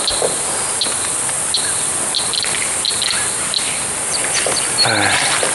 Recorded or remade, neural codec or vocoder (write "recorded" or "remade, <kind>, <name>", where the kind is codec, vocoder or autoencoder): recorded